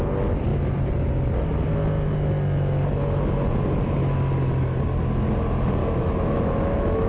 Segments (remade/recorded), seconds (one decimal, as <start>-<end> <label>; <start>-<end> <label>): 0.0-5.8 recorded; 5.8-7.1 remade